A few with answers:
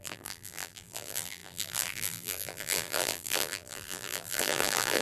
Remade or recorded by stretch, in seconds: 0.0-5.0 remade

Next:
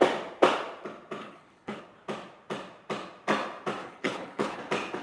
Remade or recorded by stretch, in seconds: 0.0-1.2 recorded; 1.2-1.8 remade; 1.8-3.8 recorded; 3.8-4.6 remade; 4.6-5.0 recorded